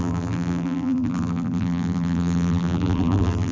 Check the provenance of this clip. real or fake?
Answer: fake